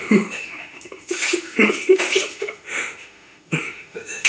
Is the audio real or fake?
fake